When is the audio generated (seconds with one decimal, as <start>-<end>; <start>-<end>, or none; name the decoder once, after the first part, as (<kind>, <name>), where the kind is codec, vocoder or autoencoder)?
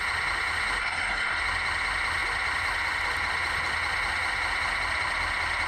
0.8-1.4 (codec, SNAC)